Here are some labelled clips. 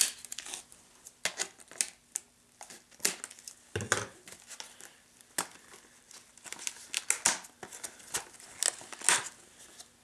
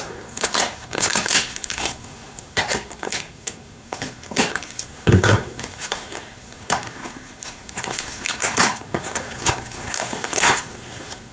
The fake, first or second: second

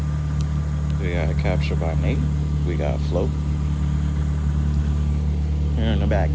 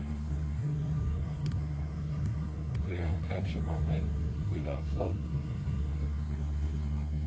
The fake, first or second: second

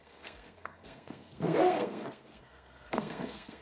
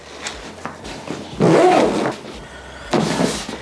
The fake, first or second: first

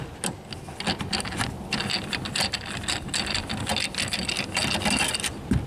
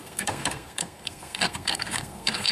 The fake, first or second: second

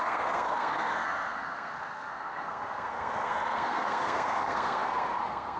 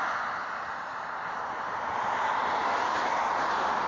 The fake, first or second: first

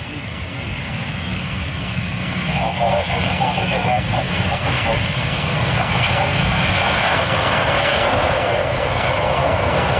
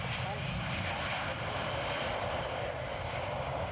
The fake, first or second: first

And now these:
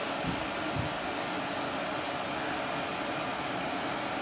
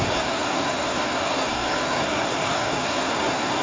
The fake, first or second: second